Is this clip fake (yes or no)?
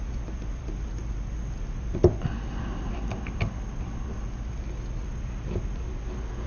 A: no